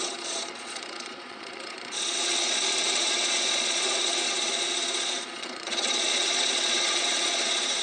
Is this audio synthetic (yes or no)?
yes